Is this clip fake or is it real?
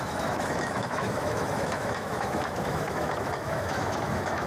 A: fake